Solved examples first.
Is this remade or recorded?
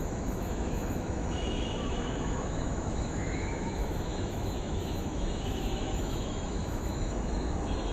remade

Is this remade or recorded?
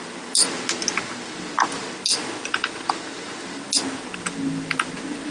recorded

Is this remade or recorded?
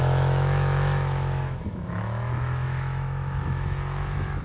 remade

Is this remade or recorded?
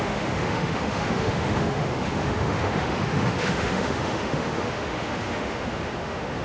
remade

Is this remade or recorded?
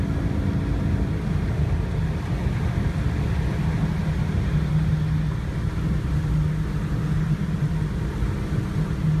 recorded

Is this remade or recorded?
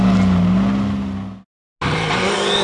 recorded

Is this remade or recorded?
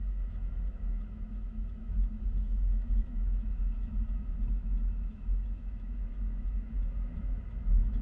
remade